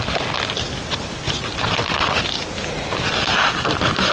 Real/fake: real